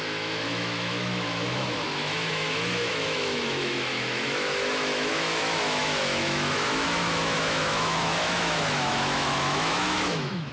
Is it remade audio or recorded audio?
remade